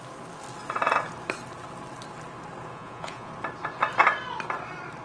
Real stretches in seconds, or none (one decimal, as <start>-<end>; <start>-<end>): 0.0-2.7; 3.3-5.0